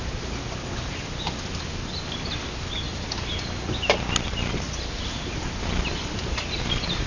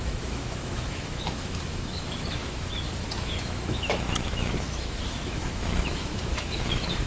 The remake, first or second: second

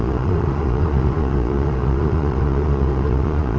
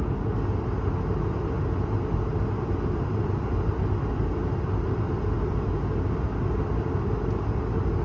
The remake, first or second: first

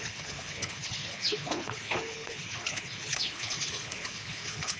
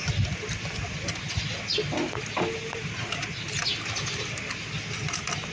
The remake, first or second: first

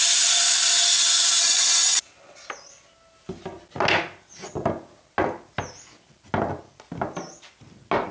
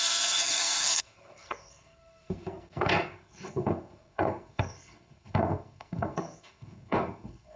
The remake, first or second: second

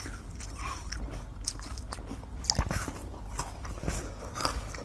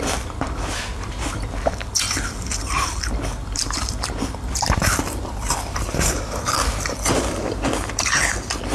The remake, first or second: second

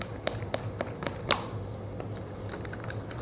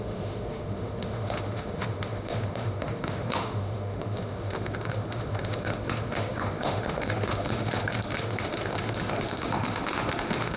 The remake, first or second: second